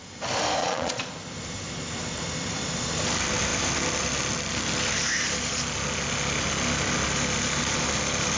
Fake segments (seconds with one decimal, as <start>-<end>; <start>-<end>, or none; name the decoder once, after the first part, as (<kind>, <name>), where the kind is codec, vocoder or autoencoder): 0.6-1.1 (vocoder, Vocos)